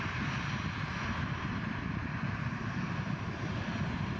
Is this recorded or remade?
recorded